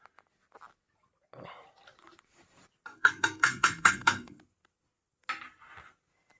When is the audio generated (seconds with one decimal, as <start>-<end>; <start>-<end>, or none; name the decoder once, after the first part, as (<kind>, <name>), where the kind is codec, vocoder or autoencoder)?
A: 2.9-4.4 (codec, SNAC)